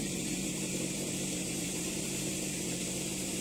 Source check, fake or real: fake